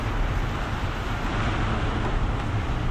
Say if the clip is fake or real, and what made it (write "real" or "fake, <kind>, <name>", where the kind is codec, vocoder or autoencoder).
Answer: real